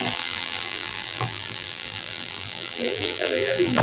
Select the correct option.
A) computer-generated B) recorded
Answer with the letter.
A